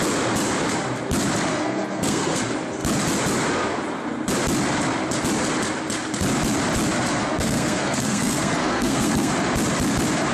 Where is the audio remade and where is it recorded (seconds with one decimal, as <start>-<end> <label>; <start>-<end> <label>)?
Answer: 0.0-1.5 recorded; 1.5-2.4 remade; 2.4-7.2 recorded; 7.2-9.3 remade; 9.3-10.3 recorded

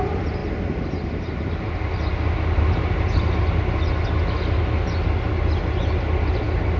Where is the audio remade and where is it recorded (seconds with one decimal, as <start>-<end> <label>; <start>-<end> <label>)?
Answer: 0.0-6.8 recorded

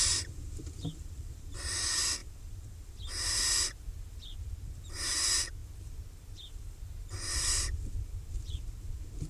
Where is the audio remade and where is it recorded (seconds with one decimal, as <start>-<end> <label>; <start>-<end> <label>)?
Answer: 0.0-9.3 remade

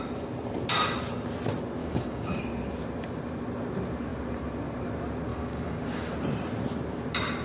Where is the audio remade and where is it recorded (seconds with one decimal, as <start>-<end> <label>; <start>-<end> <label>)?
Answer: 0.0-1.8 recorded; 1.8-2.4 remade; 2.4-5.3 recorded; 5.3-6.1 remade; 6.1-7.4 recorded